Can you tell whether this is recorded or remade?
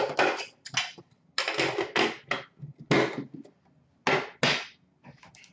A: recorded